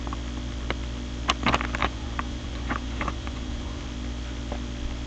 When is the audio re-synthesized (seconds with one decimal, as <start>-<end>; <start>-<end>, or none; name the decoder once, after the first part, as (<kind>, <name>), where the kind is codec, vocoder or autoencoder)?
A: 1.8-3.8 (vocoder, Vocos)